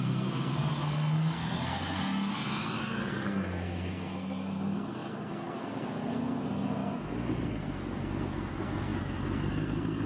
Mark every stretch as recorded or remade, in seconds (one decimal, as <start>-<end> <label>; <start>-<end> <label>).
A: 0.0-10.1 remade